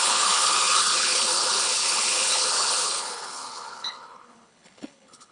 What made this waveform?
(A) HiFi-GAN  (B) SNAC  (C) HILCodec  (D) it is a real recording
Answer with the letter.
C